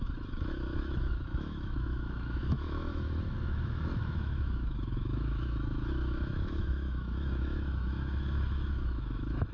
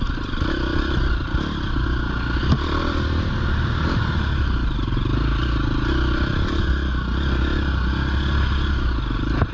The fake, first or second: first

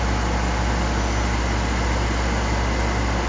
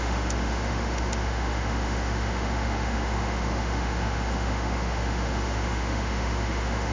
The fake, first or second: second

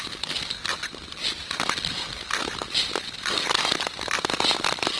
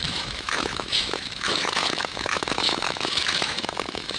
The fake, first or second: second